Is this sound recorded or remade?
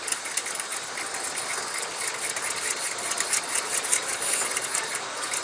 recorded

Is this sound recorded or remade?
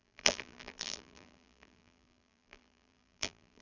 remade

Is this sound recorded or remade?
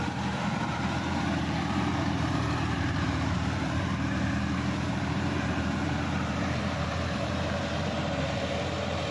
remade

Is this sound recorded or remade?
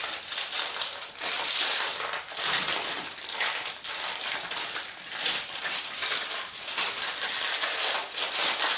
remade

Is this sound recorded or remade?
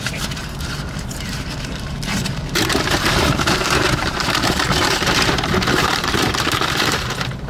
remade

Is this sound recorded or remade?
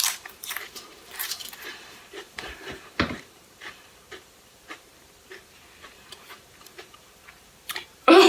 remade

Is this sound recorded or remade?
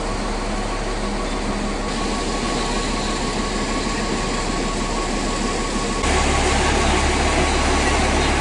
recorded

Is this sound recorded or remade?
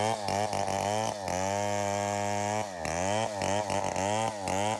recorded